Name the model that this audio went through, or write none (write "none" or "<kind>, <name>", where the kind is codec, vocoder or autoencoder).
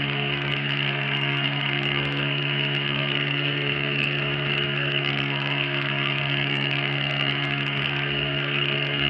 codec, SNAC